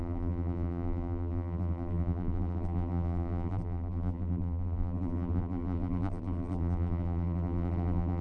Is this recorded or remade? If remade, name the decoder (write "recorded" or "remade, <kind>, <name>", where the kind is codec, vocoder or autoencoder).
remade, vocoder, BigVGAN v2